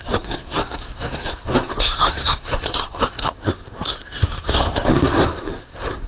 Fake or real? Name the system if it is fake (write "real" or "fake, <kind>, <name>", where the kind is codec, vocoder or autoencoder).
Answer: fake, codec, SNAC